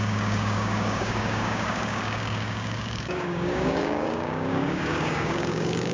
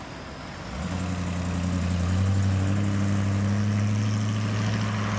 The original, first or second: second